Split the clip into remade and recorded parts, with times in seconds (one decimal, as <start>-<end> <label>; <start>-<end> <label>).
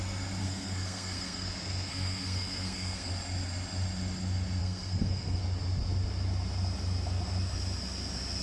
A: 0.0-0.4 recorded; 0.4-3.1 remade; 3.1-4.6 recorded; 4.6-5.4 remade; 5.4-8.4 recorded